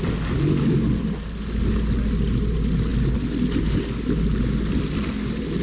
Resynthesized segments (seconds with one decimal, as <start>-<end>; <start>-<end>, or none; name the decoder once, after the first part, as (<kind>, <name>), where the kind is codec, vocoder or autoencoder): none